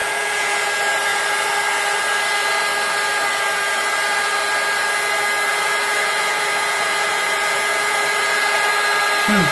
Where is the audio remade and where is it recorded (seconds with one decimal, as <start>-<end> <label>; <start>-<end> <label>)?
0.0-0.7 remade; 0.7-5.5 recorded; 5.5-8.7 remade; 8.7-9.5 recorded